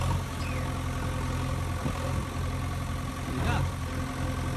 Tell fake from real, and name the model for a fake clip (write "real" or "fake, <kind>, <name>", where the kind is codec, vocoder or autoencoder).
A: real